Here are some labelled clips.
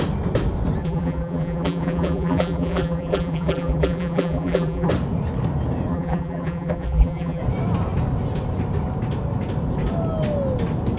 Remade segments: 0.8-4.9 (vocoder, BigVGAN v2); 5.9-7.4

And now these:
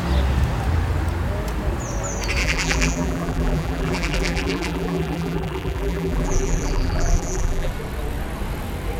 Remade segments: 2.4-7.7 (vocoder, BigVGAN v2)

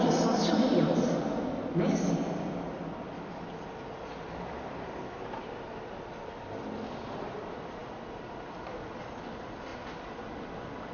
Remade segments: 0.0-0.7 (vocoder, BigVGAN v2); 4.6-7.8; 8.5-9.7